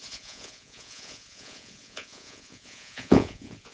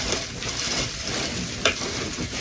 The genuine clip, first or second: second